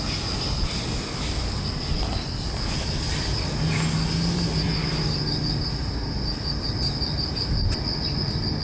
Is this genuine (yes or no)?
yes